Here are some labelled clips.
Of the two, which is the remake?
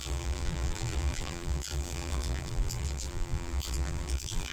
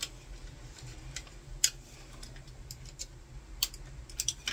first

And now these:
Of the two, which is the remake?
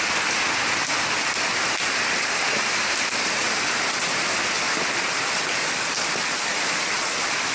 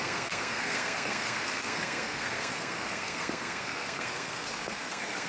second